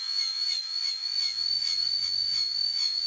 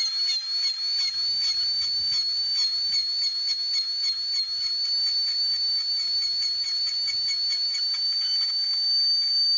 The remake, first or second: first